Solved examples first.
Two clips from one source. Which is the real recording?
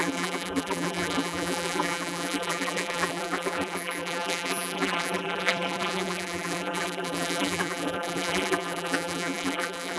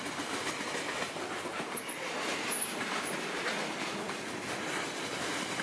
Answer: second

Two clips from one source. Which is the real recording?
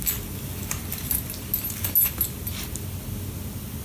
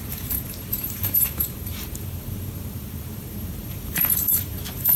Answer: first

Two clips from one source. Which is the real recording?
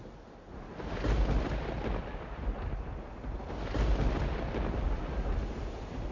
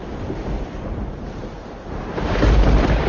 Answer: first